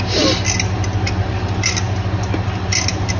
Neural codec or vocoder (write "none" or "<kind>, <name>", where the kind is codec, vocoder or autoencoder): none